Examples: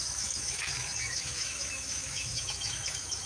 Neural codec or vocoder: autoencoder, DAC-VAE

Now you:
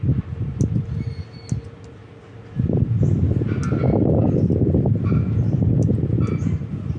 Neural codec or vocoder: none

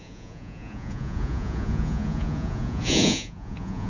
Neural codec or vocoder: vocoder, Vocos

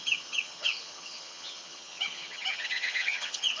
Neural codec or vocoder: vocoder, HiFi-GAN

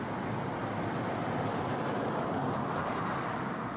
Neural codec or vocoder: none